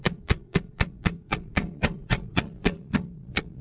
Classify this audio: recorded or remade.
remade